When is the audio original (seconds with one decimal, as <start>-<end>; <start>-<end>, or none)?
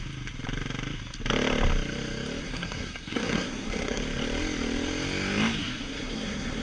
0.0-2.4; 4.0-5.6